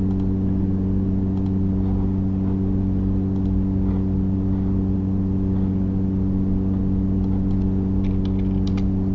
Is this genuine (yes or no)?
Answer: yes